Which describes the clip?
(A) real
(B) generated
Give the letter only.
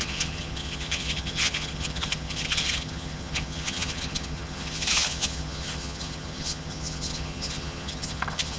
B